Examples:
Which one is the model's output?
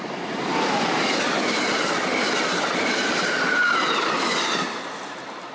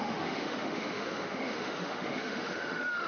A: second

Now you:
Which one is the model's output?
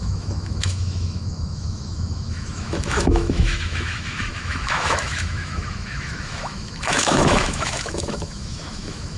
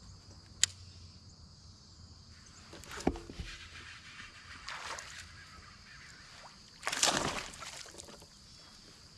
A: first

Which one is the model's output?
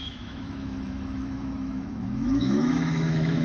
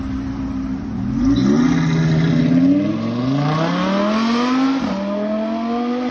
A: first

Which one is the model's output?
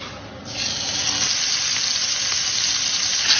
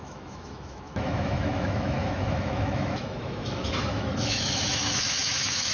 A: second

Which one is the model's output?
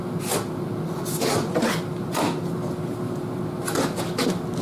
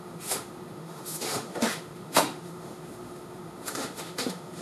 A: second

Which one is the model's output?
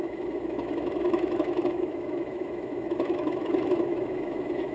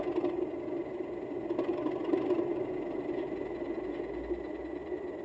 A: first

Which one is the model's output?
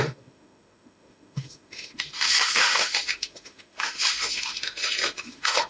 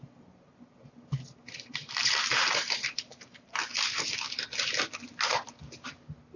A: first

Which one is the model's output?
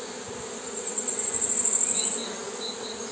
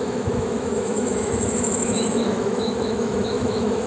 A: second